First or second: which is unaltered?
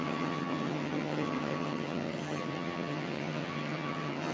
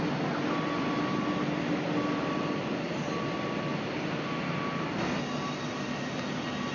second